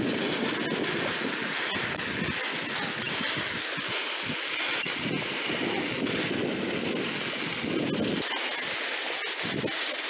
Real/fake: real